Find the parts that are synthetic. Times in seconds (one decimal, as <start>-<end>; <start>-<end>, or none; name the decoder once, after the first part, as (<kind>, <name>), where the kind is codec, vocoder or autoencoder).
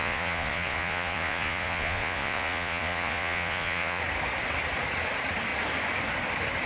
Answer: 0.0-4.0 (vocoder, Vocos)